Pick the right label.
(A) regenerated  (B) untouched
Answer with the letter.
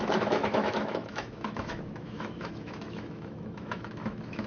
A